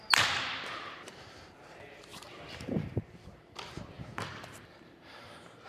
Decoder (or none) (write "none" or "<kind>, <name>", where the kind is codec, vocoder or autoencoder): vocoder, BigVGAN v2